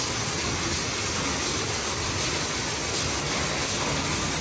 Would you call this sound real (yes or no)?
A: yes